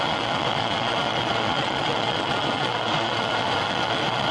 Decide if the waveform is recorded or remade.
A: remade